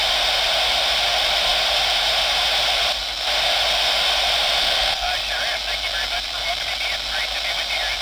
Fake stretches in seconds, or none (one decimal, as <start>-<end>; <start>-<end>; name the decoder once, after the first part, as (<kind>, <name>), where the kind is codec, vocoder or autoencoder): 4.6-5.1 (codec, SNAC)